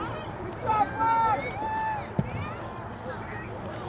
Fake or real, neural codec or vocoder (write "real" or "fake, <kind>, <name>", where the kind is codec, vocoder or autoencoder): real